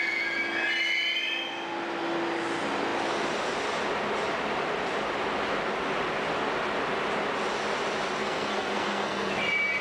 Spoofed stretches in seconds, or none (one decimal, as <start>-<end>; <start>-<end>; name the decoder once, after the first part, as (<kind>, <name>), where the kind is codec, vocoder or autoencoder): 8.2-9.3 (codec, SNAC)